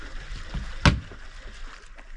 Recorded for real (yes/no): yes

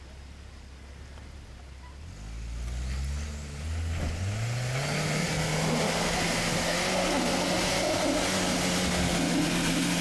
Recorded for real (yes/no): yes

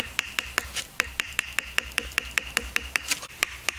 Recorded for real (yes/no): no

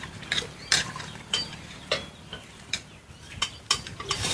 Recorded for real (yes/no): no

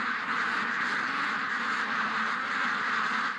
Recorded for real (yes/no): yes